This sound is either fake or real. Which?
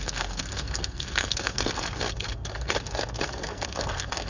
fake